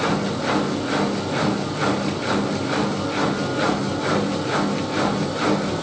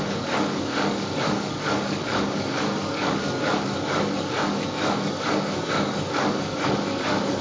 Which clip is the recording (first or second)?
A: first